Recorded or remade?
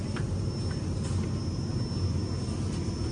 recorded